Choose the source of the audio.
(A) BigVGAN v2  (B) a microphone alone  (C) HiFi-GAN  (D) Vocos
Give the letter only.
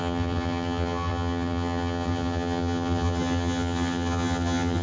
C